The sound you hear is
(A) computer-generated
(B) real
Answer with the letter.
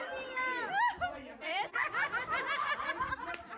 A